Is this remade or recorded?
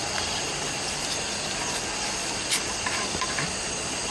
recorded